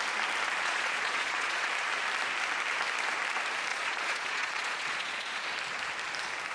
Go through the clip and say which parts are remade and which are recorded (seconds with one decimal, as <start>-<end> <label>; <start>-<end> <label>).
0.0-0.6 recorded; 0.6-1.7 remade; 1.7-3.7 recorded; 3.7-5.4 remade; 5.4-6.5 recorded